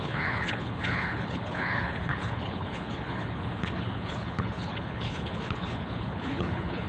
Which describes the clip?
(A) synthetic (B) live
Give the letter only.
A